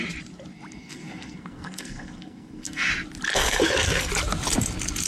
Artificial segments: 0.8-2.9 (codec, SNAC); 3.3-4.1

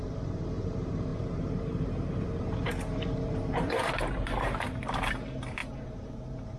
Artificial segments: 0.0-6.6 (vocoder, BigVGAN v2)

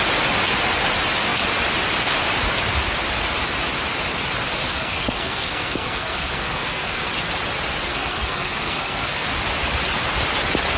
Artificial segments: 4.7-7.1 (codec, SNAC); 7.9-9.3

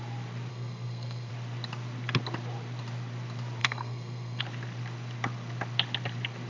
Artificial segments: 0.5-1.3 (codec, SNAC); 3.6-4.4

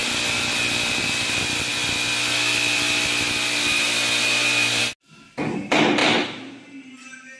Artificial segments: none